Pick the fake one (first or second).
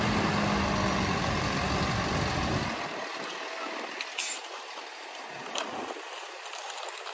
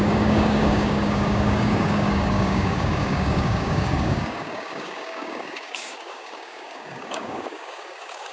second